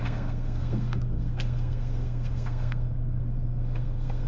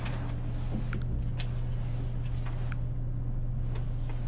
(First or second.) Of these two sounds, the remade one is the first